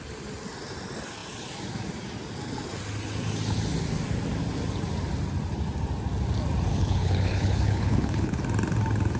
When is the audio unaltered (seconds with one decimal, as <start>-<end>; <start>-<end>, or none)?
0.0-6.7; 8.4-9.2